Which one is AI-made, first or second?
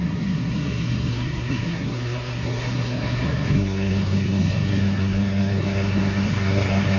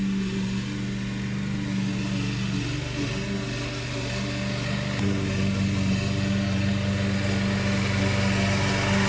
first